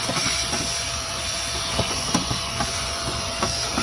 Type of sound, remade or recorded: remade